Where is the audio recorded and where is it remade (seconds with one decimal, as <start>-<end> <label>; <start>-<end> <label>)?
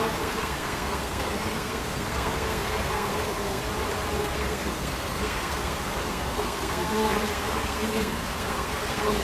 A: 0.0-3.6 remade; 3.6-4.2 recorded; 4.2-9.2 remade